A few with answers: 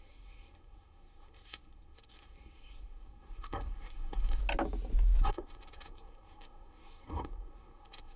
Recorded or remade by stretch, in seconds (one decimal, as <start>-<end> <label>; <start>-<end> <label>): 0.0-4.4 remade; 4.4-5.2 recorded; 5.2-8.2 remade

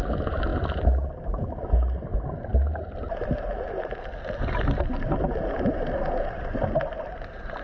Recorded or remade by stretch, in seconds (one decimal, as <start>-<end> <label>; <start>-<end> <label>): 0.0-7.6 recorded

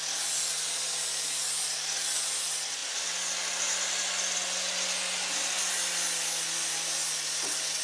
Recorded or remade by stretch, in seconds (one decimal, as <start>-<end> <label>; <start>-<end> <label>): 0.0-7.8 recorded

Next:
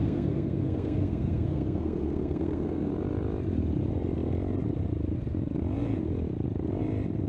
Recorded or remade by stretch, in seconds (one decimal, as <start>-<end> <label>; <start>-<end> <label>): 0.0-2.9 remade; 2.9-7.3 recorded

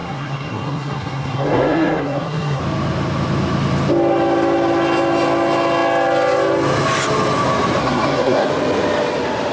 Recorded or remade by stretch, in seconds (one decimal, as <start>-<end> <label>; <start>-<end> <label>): 0.0-2.6 remade; 2.6-7.8 recorded; 7.8-8.5 remade; 8.5-9.5 recorded

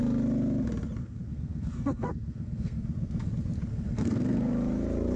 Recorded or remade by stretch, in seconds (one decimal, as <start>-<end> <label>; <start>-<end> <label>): 0.0-1.0 recorded; 1.0-3.3 remade; 3.3-3.7 recorded; 3.7-4.5 remade; 4.5-5.2 recorded

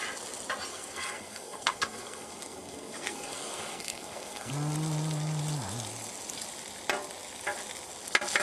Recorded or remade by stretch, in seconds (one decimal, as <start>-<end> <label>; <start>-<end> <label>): 0.0-0.7 recorded; 0.7-4.5 remade; 4.5-8.4 recorded

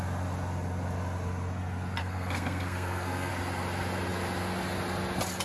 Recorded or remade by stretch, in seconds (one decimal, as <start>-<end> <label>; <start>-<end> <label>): 0.0-2.0 recorded; 2.0-3.3 remade; 3.3-5.4 recorded